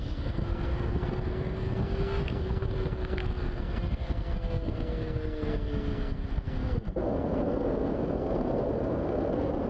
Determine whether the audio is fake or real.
fake